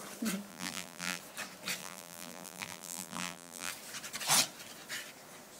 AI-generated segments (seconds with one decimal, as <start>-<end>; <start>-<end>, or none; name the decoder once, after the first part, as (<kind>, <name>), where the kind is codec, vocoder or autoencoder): 0.5-1.2 (vocoder, BigVGAN v2); 1.8-3.7